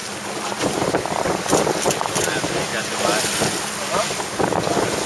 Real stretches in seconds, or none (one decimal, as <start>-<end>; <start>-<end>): 0.0-5.1